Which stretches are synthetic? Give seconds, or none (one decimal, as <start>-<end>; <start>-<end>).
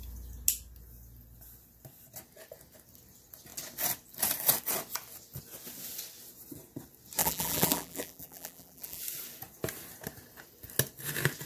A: 7.2-9.0